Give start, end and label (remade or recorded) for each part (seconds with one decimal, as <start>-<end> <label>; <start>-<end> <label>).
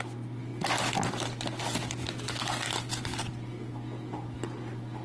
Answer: 0.0-5.0 recorded